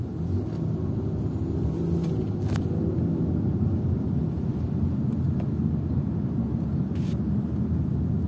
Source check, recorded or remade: recorded